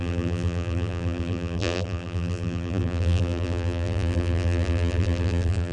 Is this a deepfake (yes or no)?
yes